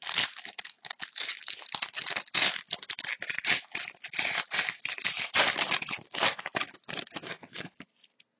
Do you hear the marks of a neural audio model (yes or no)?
no